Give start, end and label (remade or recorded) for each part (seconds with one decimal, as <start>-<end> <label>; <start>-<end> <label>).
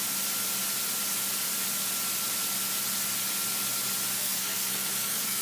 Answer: 0.0-4.2 recorded; 4.2-5.4 remade